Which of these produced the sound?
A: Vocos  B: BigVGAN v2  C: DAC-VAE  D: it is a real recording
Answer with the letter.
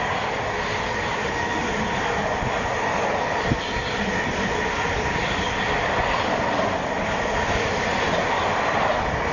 D